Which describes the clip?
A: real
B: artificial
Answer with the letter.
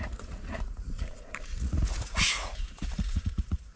B